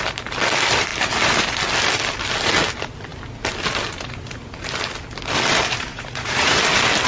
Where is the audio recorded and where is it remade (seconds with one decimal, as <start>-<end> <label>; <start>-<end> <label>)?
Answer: 0.0-5.9 recorded; 5.9-6.6 remade; 6.6-7.1 recorded